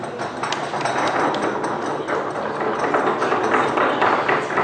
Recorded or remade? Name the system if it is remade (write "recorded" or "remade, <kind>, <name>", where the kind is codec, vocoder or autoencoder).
recorded